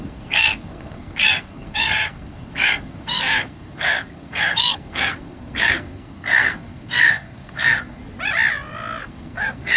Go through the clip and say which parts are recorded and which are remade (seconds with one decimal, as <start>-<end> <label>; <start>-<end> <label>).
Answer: 0.0-8.0 remade; 8.0-9.0 recorded; 9.0-9.8 remade